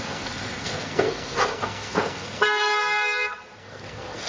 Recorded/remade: remade